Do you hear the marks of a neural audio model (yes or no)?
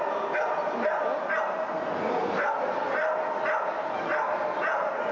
no